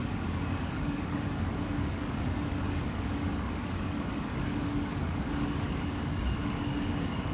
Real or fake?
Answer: fake